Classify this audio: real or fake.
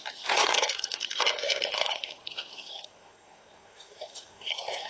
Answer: fake